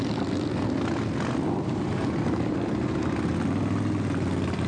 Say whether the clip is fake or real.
real